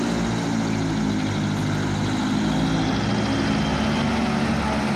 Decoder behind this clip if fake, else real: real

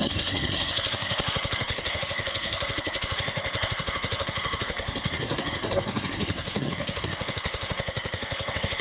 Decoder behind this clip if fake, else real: fake, codec, SNAC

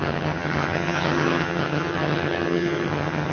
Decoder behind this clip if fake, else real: fake, vocoder, HiFi-GAN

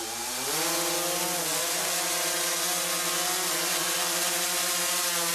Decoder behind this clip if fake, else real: real